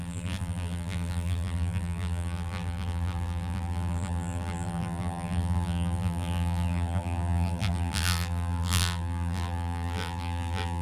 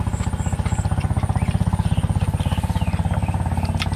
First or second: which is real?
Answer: second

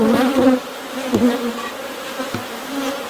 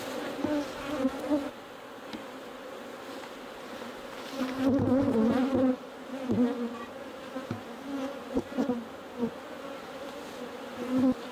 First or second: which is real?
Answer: second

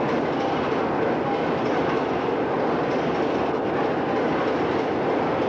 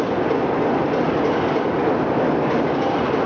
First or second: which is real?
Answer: first